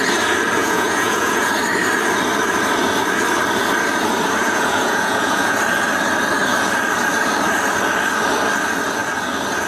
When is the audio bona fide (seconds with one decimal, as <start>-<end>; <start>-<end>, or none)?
0.0-0.6; 1.5-4.4; 5.6-9.7